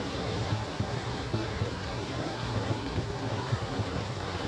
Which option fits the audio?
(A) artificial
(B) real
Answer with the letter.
A